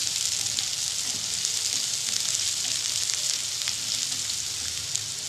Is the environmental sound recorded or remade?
recorded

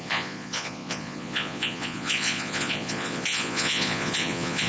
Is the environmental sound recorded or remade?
remade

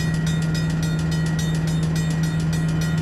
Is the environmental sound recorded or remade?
recorded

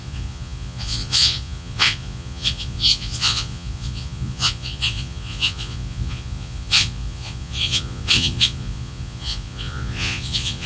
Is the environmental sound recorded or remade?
remade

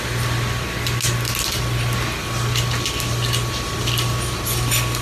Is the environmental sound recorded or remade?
recorded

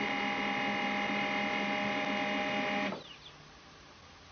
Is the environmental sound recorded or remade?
recorded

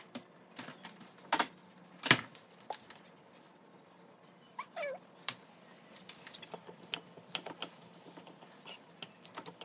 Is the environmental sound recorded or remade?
recorded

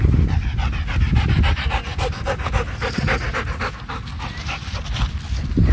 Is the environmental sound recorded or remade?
recorded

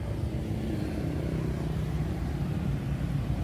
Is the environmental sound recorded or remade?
recorded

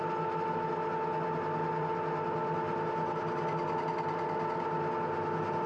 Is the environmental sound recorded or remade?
recorded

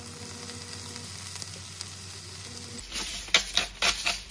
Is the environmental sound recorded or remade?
recorded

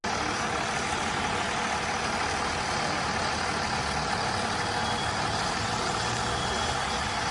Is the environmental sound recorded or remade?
recorded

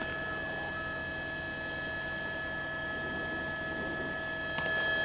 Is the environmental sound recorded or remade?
recorded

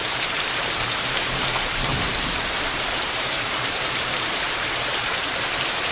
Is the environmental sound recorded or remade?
remade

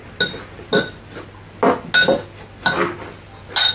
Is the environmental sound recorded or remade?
recorded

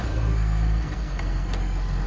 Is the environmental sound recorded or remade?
remade